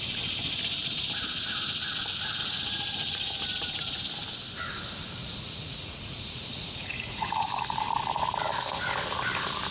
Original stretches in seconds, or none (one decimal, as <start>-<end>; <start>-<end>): 0.0-2.4; 3.4-5.2; 7.5-9.7

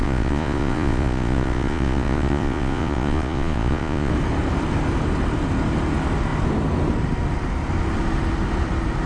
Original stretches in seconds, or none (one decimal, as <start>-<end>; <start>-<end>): 4.1-9.1

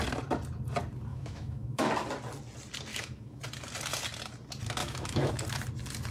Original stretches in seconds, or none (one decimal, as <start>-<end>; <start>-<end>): 0.0-1.1; 1.9-2.9; 3.4-4.8; 5.3-6.1

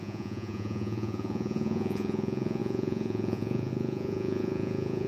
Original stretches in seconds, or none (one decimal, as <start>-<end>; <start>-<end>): none

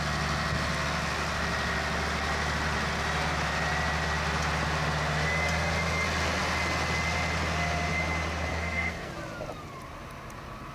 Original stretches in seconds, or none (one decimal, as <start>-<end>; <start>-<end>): 0.0-8.5; 9.1-10.7

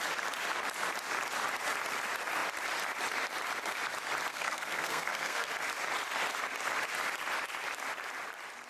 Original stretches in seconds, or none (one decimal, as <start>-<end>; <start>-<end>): 0.0-4.3; 5.5-8.7